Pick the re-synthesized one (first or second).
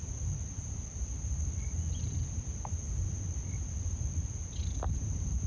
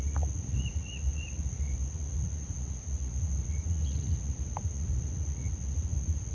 second